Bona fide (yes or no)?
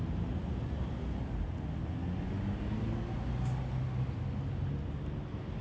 yes